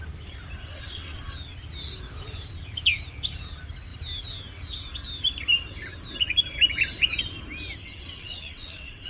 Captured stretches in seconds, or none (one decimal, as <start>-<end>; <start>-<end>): 0.0-0.6; 1.2-7.8